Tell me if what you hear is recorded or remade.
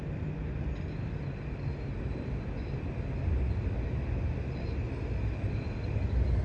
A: recorded